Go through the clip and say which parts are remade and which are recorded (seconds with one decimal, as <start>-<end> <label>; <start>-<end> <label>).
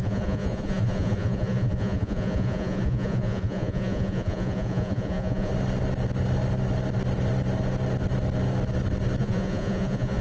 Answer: 0.0-5.5 remade; 5.5-9.2 recorded; 9.2-10.2 remade